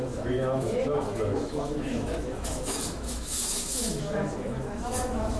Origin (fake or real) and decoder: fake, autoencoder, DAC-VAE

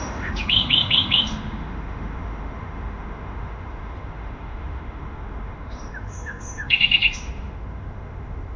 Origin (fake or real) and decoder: fake, autoencoder, DAC-VAE